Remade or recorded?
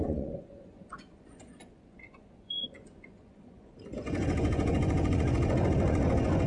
remade